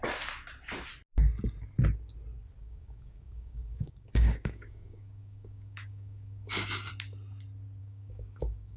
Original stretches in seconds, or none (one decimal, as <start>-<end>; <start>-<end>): 0.0-2.6; 6.9-7.8